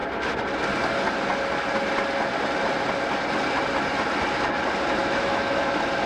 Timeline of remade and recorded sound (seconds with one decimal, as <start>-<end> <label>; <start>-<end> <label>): 0.0-5.0 recorded; 5.0-5.6 remade; 5.6-6.1 recorded